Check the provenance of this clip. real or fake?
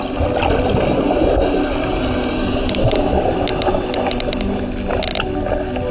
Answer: real